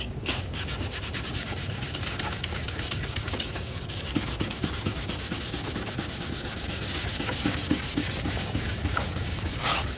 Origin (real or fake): fake